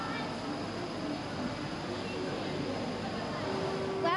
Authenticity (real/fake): real